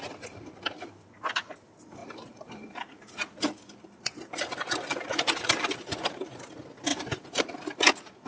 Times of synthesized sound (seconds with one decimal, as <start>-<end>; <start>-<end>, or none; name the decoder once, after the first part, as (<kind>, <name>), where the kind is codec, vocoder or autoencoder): 2.0-6.4 (vocoder, BigVGAN v2); 6.9-7.4